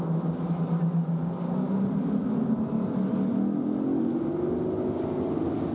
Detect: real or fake real